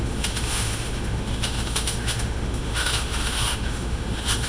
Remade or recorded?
remade